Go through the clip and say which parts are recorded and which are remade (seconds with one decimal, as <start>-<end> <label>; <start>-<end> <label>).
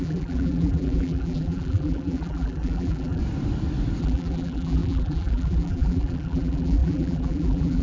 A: 0.0-3.2 remade; 3.2-4.0 recorded; 4.0-7.8 remade